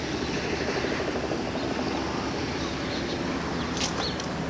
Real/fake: real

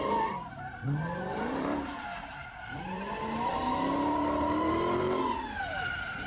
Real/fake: fake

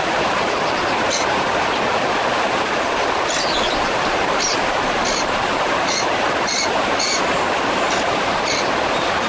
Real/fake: real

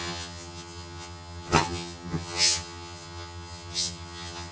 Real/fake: fake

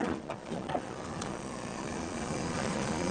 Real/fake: fake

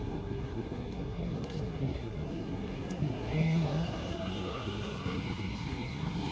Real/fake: fake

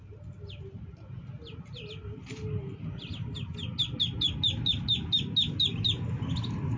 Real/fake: real